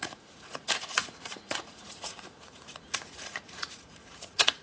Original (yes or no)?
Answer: no